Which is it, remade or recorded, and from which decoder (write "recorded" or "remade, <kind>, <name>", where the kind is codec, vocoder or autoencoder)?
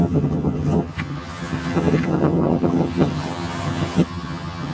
remade, vocoder, HiFi-GAN